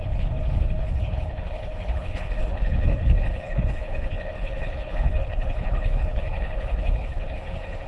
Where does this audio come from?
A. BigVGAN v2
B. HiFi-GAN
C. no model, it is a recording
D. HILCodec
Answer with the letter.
D